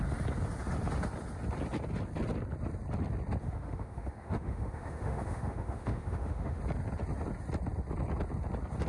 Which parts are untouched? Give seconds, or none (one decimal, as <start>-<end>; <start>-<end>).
0.0-3.4; 6.6-8.9